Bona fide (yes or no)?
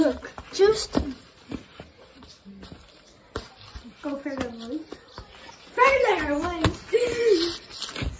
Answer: yes